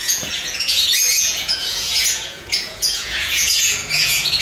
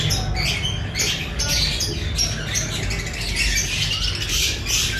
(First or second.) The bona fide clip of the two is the second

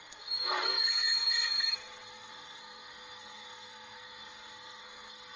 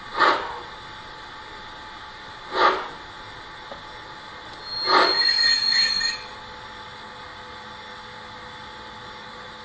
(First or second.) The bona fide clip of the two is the second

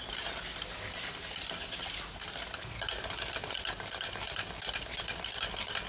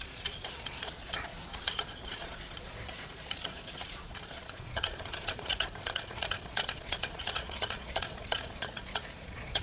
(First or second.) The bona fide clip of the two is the first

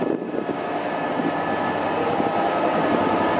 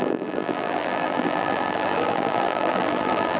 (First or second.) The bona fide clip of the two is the first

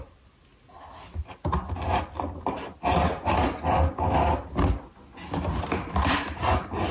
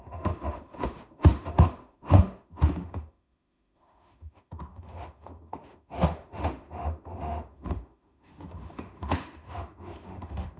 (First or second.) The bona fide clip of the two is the first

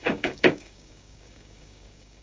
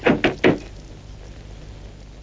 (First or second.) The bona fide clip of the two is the second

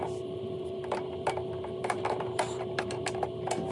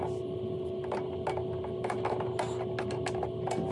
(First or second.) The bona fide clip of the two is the second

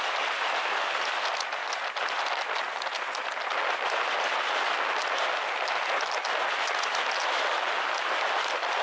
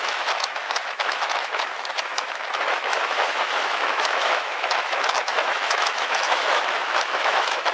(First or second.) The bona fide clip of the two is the first